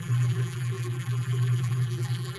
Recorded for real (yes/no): no